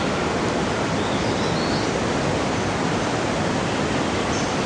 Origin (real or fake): real